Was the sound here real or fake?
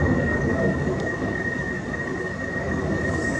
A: fake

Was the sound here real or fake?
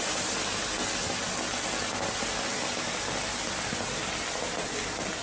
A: real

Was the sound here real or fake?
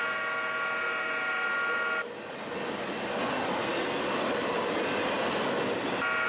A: real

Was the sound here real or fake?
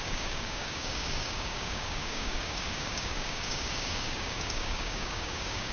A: fake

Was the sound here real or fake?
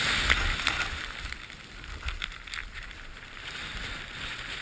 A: real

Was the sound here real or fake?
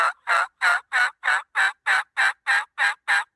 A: real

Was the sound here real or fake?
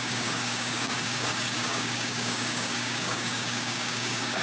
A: fake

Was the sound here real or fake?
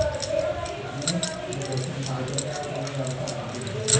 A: real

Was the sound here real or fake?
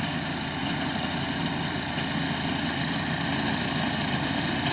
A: real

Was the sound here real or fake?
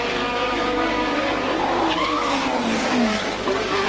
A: fake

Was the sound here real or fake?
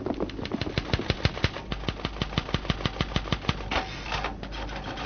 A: real